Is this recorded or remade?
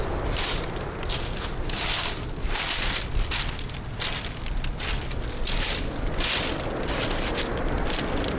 recorded